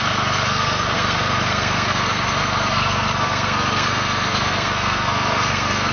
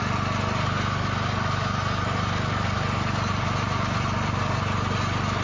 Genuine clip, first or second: second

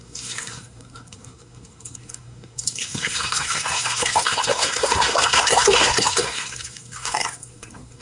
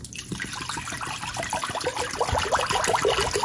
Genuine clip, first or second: second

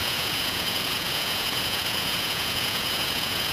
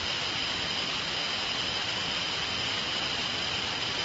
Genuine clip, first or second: second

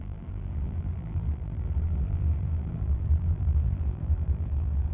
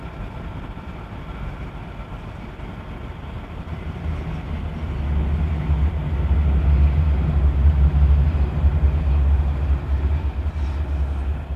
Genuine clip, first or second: second